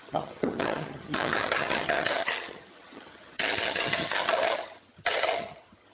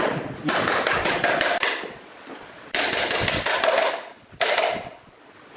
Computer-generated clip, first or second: first